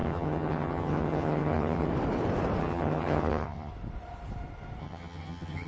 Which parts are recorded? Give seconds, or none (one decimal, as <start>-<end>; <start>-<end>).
1.9-2.6; 3.7-4.8